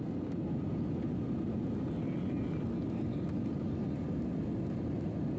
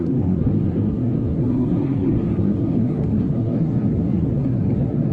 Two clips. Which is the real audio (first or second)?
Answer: first